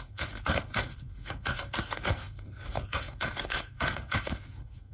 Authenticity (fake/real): fake